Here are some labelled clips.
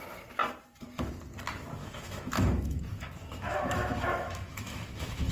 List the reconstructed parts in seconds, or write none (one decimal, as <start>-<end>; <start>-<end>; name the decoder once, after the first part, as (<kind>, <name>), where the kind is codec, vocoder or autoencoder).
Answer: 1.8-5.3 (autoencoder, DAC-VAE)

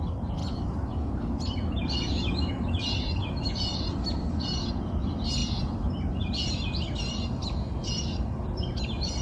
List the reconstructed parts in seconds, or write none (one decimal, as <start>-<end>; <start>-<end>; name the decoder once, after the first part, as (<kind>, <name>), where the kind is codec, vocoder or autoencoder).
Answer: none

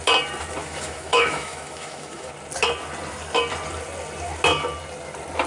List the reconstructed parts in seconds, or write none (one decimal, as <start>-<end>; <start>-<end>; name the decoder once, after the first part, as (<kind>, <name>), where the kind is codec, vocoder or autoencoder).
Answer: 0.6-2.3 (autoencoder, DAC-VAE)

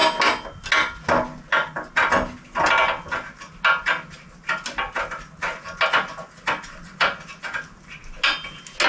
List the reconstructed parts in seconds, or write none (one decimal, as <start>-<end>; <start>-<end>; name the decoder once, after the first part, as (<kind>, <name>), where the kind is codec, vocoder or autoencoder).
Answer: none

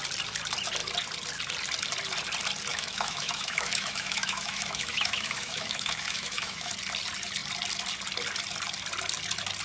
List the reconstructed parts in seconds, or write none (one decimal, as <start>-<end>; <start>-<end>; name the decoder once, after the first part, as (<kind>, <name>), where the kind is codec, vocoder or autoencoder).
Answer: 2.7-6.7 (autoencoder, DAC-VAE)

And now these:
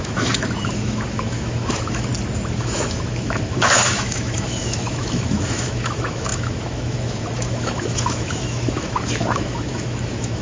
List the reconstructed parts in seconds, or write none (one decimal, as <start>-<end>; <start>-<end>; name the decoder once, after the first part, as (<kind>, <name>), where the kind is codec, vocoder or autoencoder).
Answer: 0.0-2.1 (autoencoder, DAC-VAE); 2.6-10.4

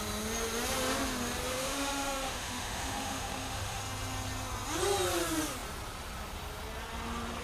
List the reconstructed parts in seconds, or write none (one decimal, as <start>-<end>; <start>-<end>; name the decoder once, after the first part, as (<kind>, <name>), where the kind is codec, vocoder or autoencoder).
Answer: 1.5-3.8 (autoencoder, DAC-VAE)

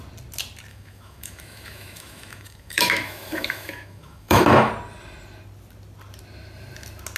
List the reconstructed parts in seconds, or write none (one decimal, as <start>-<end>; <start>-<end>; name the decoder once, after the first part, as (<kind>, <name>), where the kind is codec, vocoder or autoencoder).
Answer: 0.7-4.7 (autoencoder, DAC-VAE)